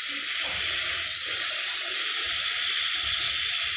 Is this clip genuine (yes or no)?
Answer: yes